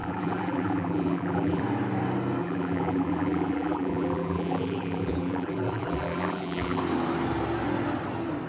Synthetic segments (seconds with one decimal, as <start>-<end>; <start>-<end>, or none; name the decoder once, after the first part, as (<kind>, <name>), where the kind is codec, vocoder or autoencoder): 0.0-1.6 (vocoder, BigVGAN v2); 2.4-6.8